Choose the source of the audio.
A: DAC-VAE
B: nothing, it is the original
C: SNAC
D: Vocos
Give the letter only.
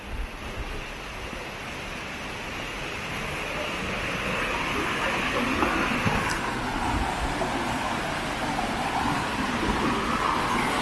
B